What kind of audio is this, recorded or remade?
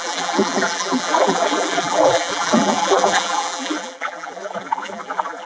remade